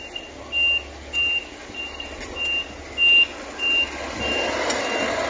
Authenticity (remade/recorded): recorded